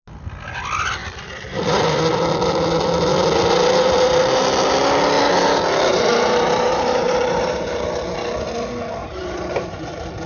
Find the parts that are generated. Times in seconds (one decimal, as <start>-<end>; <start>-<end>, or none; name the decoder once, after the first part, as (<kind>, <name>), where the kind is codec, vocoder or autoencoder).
5.9-8.0 (vocoder, BigVGAN v2); 9.0-9.9

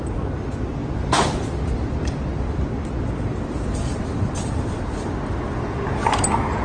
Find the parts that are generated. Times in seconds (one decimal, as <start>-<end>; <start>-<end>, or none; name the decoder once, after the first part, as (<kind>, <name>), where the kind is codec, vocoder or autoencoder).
0.8-4.8 (vocoder, BigVGAN v2)